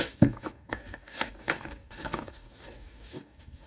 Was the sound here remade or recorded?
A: remade